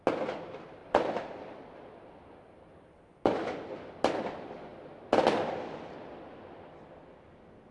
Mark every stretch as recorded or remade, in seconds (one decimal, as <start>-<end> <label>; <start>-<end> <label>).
0.0-0.8 recorded; 0.8-3.2 remade; 3.2-7.7 recorded